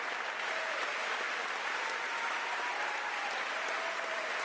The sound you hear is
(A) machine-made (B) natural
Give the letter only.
B